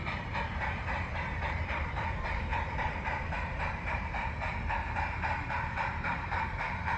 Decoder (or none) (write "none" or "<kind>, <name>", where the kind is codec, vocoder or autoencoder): vocoder, BigVGAN v2